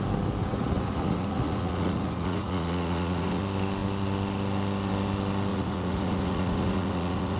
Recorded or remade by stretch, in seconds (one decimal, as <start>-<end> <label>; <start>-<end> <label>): 0.0-0.4 recorded; 0.4-3.4 remade; 3.4-5.5 recorded; 5.5-7.4 remade